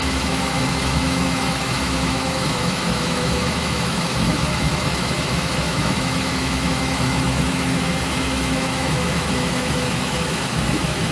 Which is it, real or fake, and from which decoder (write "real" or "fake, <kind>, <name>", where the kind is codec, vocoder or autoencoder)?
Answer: fake, autoencoder, DAC-VAE